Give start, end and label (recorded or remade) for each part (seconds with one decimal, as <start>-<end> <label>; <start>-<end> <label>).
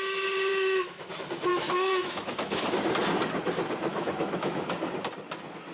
0.0-0.5 recorded; 0.5-1.1 remade; 1.1-1.5 recorded; 1.5-2.7 remade; 2.7-3.9 recorded; 3.9-4.9 remade; 4.9-5.7 recorded